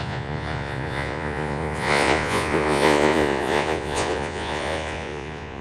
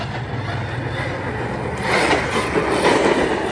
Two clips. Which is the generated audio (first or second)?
first